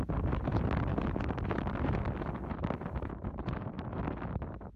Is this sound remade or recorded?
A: recorded